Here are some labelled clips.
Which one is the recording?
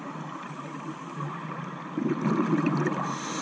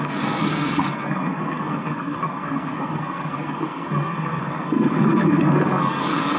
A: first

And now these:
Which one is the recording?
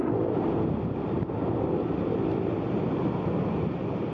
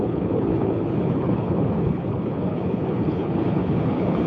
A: first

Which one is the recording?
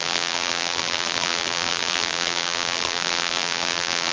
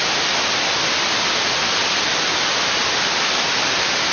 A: second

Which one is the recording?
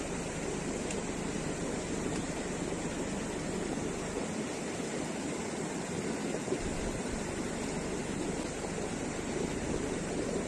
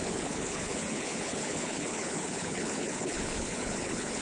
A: first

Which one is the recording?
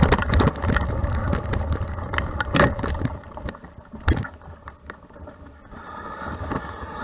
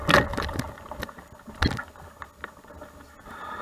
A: second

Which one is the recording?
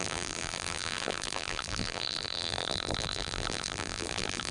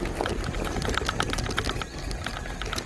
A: second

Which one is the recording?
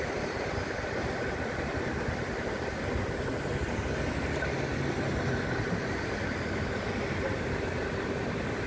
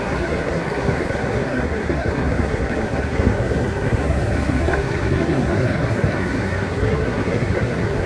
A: first